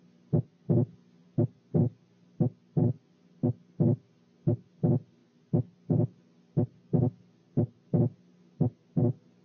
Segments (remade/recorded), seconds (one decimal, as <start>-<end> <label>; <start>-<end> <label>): 0.0-9.4 recorded